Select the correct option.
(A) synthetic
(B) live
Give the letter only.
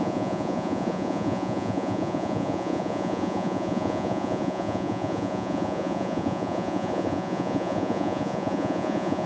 A